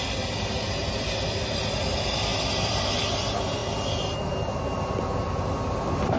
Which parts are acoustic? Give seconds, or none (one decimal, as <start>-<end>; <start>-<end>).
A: 0.0-6.2